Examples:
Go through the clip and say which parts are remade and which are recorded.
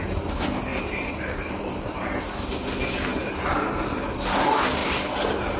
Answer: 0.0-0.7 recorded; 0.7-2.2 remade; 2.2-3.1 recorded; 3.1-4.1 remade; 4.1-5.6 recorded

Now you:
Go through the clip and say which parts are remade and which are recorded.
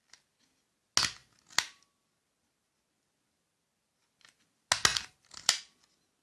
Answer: 0.0-4.9 recorded; 4.9-5.5 remade; 5.5-6.2 recorded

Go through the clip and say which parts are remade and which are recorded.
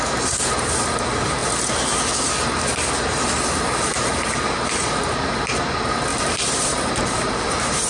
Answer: 0.0-6.1 recorded; 6.1-7.3 remade; 7.3-7.9 recorded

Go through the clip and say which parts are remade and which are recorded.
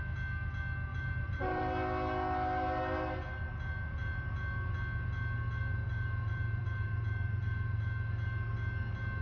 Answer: 0.0-0.9 recorded; 0.9-1.6 remade; 1.6-5.6 recorded; 5.6-7.8 remade; 7.8-9.2 recorded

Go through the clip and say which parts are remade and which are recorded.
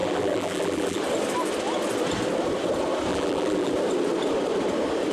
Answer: 0.0-1.0 remade; 1.0-3.1 recorded; 3.1-3.7 remade; 3.7-5.1 recorded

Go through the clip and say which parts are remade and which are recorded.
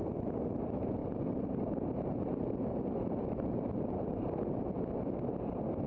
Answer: 0.0-1.0 recorded; 1.0-4.5 remade; 4.5-5.9 recorded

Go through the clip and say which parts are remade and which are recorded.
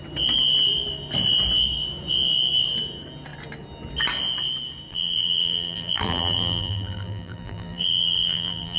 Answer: 0.0-4.9 recorded; 4.9-8.8 remade